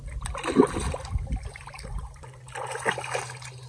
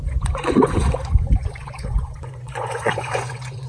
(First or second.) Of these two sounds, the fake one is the second